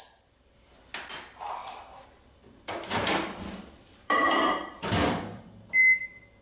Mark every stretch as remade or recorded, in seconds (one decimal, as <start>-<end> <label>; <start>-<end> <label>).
0.0-1.6 recorded; 1.6-5.4 remade; 5.4-6.4 recorded